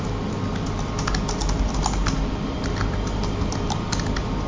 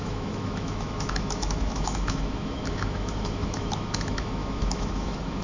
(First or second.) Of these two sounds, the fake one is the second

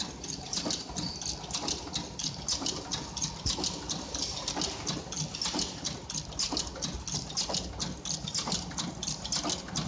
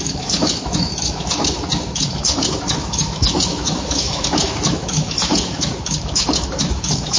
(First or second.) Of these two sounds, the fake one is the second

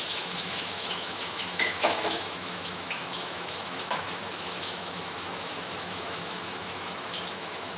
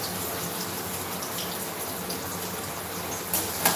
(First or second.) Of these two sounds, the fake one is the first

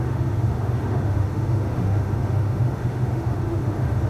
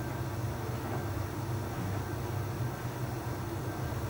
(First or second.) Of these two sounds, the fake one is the first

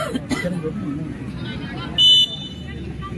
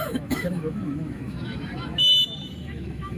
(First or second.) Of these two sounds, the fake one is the second